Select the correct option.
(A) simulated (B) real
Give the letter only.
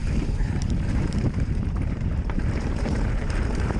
A